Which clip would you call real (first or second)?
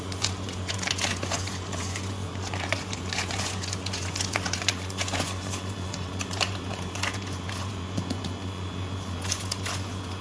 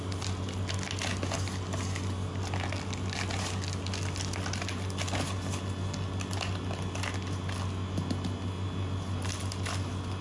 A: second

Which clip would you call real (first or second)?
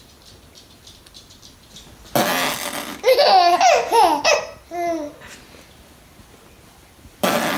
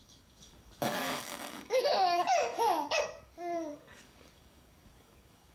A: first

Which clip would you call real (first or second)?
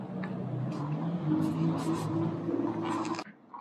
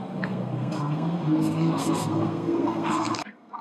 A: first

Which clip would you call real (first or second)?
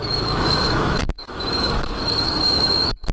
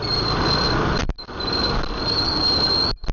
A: second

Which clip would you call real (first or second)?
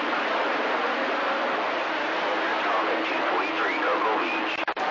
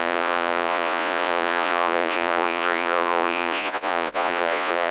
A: first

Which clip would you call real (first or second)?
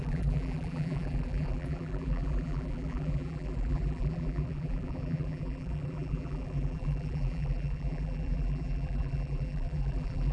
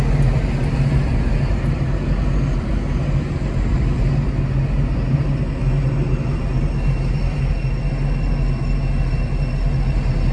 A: second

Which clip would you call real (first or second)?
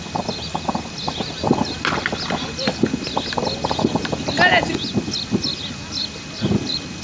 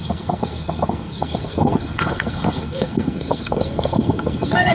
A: first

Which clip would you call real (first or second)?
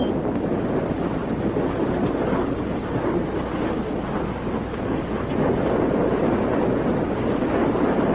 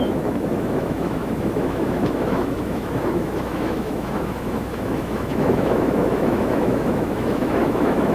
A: first